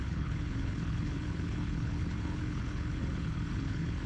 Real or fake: fake